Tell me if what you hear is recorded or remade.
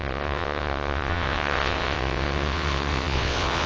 remade